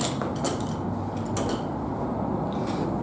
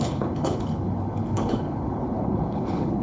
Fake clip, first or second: second